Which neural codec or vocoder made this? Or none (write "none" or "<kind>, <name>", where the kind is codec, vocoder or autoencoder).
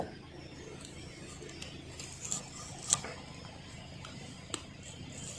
none